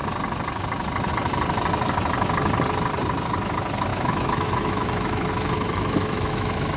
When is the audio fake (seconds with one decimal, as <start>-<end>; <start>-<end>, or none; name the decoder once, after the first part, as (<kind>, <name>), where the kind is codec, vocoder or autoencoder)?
3.9-6.8 (autoencoder, DAC-VAE)